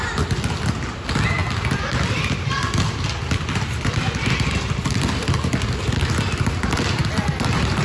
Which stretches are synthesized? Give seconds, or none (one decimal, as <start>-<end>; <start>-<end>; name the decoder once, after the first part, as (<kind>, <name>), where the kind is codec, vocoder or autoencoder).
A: none